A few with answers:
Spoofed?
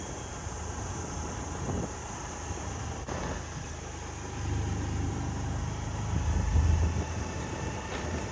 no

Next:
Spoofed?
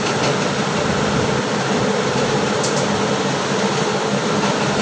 no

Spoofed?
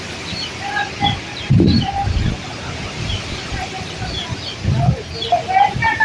no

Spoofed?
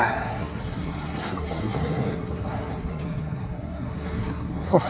yes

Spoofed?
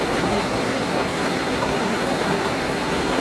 yes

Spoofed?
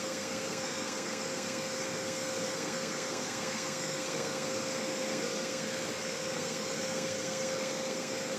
yes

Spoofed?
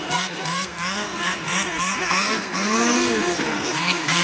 yes